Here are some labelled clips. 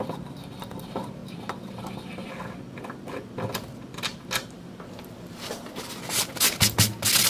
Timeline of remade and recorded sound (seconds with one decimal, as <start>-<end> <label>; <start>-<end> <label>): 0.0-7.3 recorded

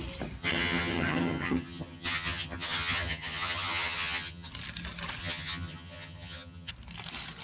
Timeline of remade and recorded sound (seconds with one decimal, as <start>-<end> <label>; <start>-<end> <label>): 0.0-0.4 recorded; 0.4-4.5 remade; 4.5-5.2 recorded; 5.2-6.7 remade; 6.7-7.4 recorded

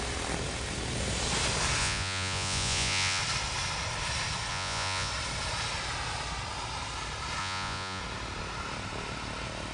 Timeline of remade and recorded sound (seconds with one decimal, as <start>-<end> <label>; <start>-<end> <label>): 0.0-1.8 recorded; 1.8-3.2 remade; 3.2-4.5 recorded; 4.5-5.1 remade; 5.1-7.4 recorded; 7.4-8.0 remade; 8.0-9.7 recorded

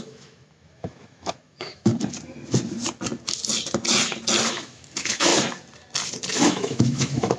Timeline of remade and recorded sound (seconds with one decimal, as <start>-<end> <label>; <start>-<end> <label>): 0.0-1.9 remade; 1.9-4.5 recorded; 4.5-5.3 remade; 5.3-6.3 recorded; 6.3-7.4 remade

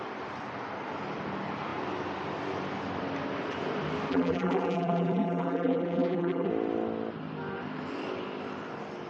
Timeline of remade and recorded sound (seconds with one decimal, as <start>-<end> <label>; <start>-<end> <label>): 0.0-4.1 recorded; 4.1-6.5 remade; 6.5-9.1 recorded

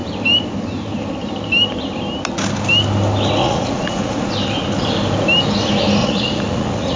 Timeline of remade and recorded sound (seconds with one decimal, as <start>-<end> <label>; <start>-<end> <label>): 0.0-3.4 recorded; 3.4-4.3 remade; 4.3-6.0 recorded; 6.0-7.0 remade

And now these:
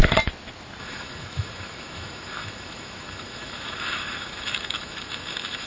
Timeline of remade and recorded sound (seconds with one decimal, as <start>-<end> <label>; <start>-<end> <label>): 0.0-0.8 recorded; 0.8-5.7 remade